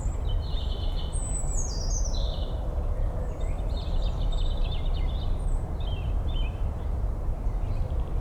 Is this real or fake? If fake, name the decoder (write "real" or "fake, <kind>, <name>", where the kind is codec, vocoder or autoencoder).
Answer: fake, vocoder, BigVGAN v2